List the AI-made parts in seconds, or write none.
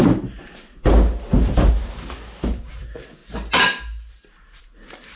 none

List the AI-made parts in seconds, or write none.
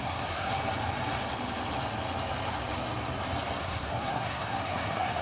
0.0-0.5 (codec, SNAC); 3.6-5.2